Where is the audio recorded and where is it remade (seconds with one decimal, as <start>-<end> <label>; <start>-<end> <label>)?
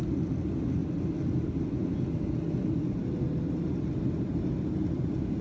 0.0-5.4 recorded